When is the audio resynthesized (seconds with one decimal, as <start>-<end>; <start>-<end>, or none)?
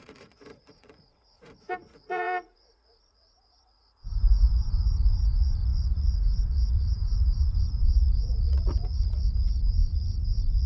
0.0-10.7